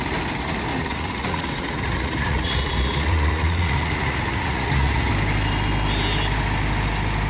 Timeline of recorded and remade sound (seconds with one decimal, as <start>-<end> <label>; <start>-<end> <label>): 0.0-0.7 recorded; 0.7-5.1 remade; 5.1-7.3 recorded

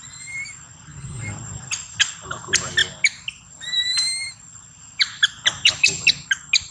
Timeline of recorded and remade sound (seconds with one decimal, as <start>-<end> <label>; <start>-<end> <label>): 0.0-6.7 recorded

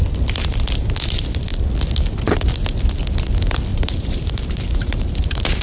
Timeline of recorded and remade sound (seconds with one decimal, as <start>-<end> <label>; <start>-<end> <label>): 0.0-3.7 recorded; 3.7-5.6 remade

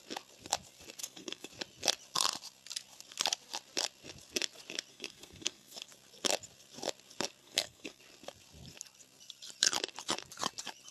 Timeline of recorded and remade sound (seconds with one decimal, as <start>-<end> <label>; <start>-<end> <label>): 0.0-1.0 recorded; 1.0-1.5 remade; 1.5-4.9 recorded; 4.9-5.9 remade; 5.9-7.4 recorded; 7.4-8.0 remade; 8.0-10.9 recorded

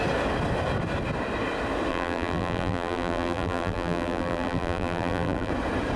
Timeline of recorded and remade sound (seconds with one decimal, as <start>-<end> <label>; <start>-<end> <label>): 0.0-1.9 recorded; 1.9-5.5 remade; 5.5-6.0 recorded